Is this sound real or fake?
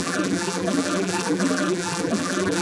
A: fake